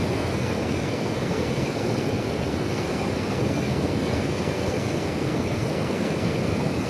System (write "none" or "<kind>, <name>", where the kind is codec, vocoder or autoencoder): codec, SNAC